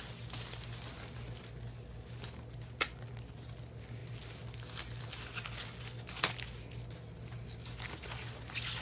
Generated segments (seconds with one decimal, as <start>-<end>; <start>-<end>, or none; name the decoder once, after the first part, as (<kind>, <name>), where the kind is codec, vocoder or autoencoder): none